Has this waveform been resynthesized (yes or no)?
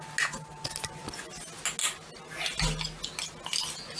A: no